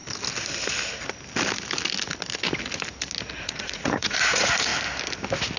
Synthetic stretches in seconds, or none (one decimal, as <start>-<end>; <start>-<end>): 3.4-4.7

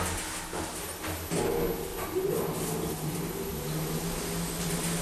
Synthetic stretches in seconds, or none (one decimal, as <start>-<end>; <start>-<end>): none

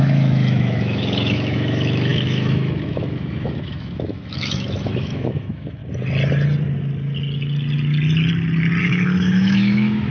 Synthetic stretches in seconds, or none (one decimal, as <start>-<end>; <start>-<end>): 0.0-5.8; 8.8-10.1